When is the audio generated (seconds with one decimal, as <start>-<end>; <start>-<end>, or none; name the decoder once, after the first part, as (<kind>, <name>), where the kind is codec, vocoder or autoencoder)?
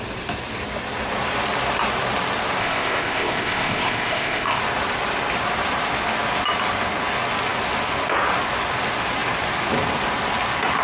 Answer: 2.6-4.6 (codec, ZipCodec)